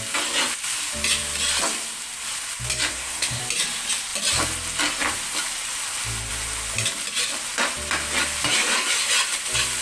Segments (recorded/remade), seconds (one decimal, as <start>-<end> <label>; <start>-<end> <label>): 0.0-2.9 recorded; 2.9-3.4 remade; 3.4-9.8 recorded